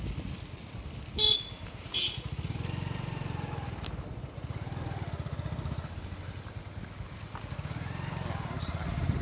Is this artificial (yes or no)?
no